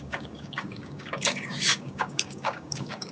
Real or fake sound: fake